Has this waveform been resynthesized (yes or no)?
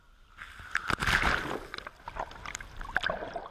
no